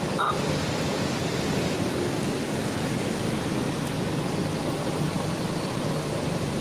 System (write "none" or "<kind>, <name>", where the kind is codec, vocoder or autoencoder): none